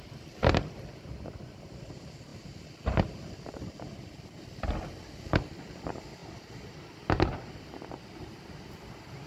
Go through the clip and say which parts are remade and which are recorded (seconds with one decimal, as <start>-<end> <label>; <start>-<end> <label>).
0.0-6.2 recorded; 6.2-7.0 remade; 7.0-9.3 recorded